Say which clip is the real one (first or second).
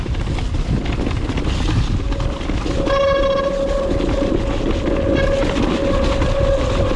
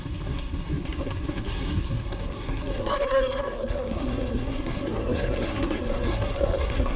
first